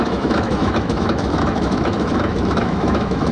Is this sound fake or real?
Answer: fake